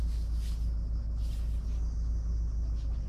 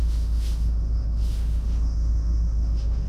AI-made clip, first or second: second